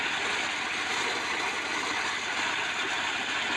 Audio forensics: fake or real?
real